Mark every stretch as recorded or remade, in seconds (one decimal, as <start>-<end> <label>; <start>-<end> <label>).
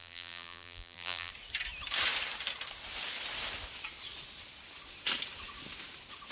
0.0-1.3 remade; 1.3-6.3 recorded